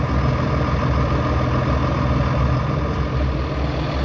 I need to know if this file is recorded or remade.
recorded